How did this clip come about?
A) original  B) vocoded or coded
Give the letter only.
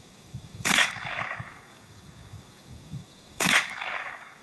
B